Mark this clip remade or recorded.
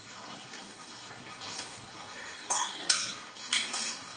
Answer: remade